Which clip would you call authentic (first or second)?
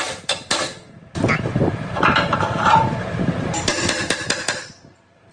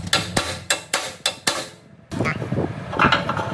second